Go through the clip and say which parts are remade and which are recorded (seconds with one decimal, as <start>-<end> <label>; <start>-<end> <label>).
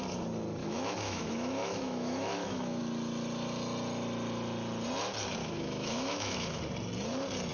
0.0-0.6 recorded; 0.6-2.8 remade; 2.8-5.4 recorded; 5.4-6.6 remade; 6.6-7.5 recorded